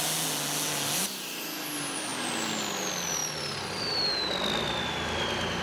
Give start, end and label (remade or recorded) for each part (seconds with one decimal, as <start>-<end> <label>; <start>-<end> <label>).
0.0-5.6 recorded

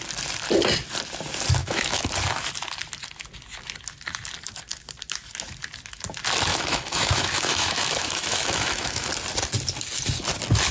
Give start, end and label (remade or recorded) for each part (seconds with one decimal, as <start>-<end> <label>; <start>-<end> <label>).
0.0-1.6 recorded; 1.6-2.1 remade; 2.1-6.5 recorded; 6.5-9.1 remade; 9.1-10.7 recorded

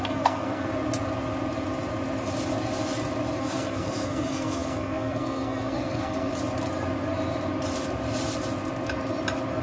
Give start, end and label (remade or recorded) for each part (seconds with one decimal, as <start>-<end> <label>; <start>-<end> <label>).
0.0-0.7 remade; 0.7-3.4 recorded; 3.4-6.3 remade; 6.3-9.6 recorded

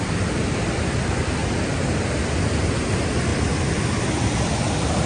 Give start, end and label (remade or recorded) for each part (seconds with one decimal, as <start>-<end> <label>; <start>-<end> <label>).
0.0-1.4 remade; 1.4-2.9 recorded; 2.9-3.3 remade; 3.3-4.1 recorded; 4.1-5.1 remade

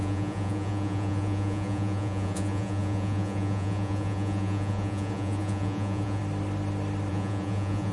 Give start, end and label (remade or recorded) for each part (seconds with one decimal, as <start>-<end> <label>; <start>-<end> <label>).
0.0-6.2 remade; 6.2-7.1 recorded; 7.1-7.9 remade

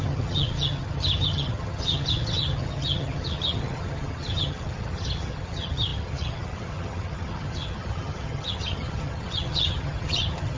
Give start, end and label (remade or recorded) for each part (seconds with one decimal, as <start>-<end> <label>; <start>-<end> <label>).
0.0-10.6 remade

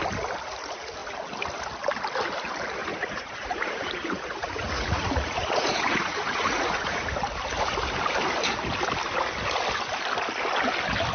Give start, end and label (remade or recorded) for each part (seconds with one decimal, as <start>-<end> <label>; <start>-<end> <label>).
0.0-2.8 recorded; 2.8-7.1 remade; 7.1-11.1 recorded

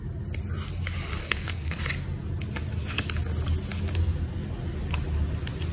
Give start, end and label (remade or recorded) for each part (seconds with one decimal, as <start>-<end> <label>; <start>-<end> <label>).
0.0-1.2 recorded; 1.2-1.8 remade; 1.8-5.7 recorded